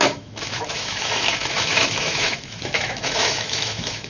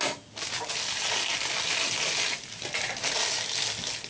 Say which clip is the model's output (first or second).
first